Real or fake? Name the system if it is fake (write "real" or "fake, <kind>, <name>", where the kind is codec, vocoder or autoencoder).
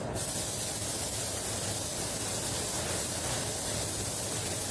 real